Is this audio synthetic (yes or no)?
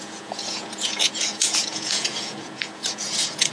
yes